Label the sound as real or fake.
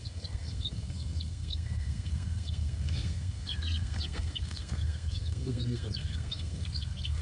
fake